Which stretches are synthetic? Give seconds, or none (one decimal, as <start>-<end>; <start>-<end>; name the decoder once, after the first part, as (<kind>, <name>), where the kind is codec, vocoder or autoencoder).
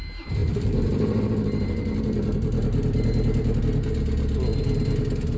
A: 0.4-3.6 (vocoder, BigVGAN v2)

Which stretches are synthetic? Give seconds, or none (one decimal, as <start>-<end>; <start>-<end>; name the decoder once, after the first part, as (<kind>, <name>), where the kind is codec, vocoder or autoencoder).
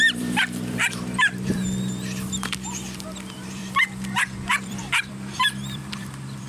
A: 0.0-3.6 (vocoder, BigVGAN v2); 4.5-6.5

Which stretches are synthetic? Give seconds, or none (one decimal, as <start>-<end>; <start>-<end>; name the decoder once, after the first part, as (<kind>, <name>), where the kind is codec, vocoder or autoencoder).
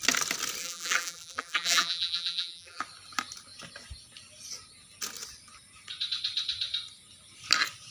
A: 0.6-2.8 (vocoder, BigVGAN v2)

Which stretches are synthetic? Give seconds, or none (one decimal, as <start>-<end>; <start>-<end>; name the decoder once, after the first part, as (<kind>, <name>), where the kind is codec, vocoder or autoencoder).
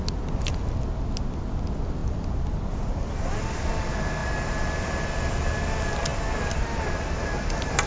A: 2.0-3.7 (vocoder, BigVGAN v2)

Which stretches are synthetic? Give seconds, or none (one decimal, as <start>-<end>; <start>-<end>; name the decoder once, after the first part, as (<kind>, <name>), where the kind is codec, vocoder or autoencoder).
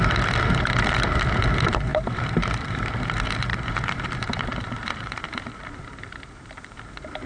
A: 1.9-2.9 (vocoder, BigVGAN v2); 3.5-6.8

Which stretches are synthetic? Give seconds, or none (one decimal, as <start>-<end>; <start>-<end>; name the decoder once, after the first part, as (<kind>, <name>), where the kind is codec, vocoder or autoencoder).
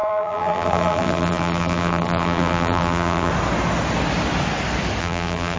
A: 0.0-3.3 (vocoder, BigVGAN v2); 5.0-5.6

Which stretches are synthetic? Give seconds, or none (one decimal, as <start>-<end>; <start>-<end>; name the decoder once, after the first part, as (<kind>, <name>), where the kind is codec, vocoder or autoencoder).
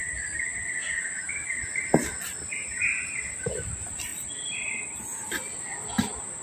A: 4.1-5.3 (vocoder, BigVGAN v2)